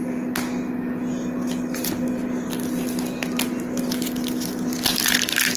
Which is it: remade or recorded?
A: recorded